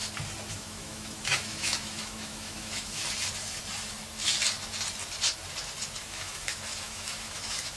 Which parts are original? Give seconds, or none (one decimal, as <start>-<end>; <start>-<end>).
0.0-0.5; 3.0-6.0